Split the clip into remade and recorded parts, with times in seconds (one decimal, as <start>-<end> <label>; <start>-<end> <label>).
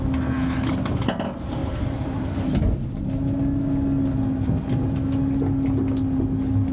0.0-1.6 recorded; 1.6-2.4 remade; 2.4-6.7 recorded